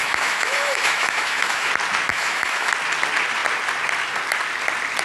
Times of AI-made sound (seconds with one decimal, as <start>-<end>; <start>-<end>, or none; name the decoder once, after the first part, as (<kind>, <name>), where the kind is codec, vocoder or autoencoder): 0.0-1.7 (autoencoder, DAC-VAE); 2.1-2.7